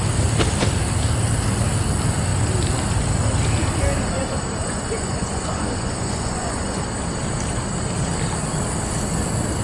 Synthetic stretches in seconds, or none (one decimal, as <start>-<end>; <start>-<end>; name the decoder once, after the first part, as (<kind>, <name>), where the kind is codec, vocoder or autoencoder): 4.6-6.8 (vocoder, Vocos)